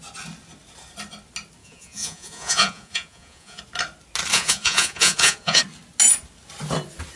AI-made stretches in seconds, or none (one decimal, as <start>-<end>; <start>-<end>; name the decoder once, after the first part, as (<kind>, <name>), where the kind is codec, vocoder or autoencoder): 1.6-3.6 (vocoder, Vocos); 4.3-5.6